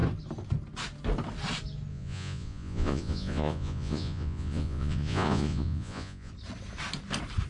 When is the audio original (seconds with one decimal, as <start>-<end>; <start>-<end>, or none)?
0.0-1.9; 6.3-7.5